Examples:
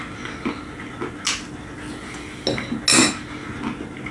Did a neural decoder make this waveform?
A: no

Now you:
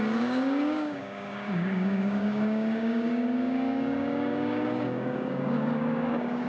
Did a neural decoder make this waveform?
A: yes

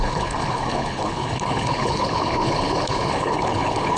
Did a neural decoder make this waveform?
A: yes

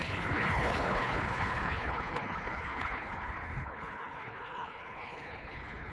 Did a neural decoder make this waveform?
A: yes